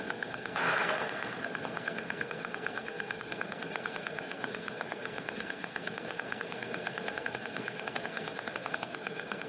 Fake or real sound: fake